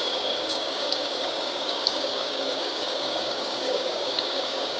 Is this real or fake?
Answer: fake